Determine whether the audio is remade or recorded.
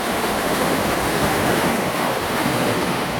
remade